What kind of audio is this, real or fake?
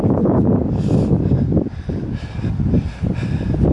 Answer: real